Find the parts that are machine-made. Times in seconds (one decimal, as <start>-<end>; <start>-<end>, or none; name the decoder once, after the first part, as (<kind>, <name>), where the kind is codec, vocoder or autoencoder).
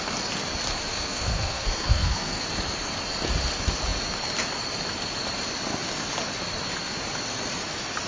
0.9-2.4 (codec, SNAC)